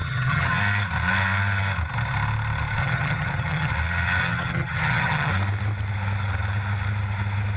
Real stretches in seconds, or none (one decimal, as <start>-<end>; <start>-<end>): 0.6-2.8; 3.7-4.2; 5.3-7.6